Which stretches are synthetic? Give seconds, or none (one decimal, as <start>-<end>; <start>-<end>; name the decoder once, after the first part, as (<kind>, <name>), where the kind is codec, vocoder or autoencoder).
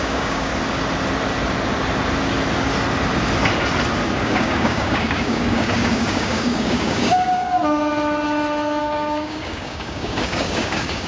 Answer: 0.0-0.5 (codec, DAC); 4.2-7.6; 8.8-11.1